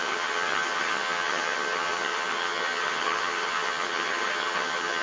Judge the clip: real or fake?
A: fake